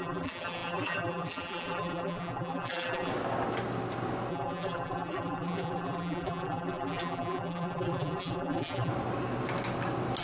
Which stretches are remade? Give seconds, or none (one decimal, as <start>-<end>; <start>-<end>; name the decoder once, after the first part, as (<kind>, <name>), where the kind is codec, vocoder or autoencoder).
0.0-3.1 (vocoder, BigVGAN v2); 4.3-8.9